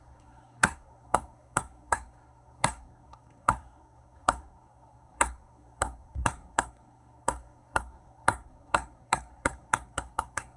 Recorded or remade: remade